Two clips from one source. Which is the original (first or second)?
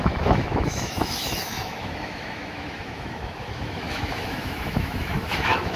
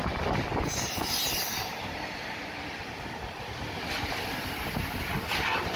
second